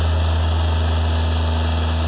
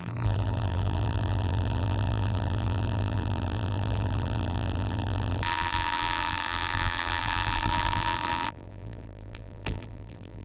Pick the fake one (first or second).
second